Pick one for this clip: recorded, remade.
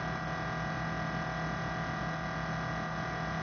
recorded